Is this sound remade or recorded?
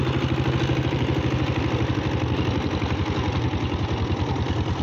recorded